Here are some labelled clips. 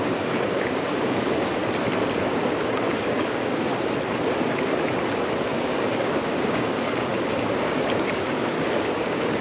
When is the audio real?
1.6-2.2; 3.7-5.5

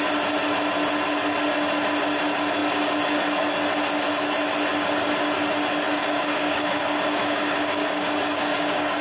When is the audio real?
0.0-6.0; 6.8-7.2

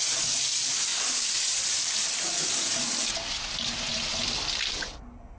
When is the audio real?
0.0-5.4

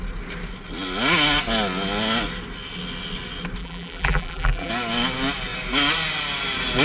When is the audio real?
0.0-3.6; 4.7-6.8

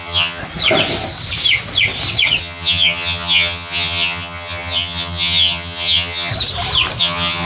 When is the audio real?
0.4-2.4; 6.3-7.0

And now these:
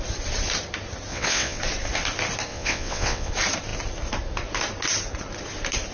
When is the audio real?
0.0-1.1; 1.6-2.5; 3.3-5.9